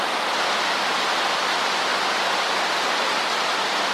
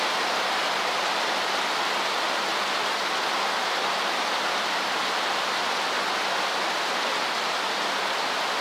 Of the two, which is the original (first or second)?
second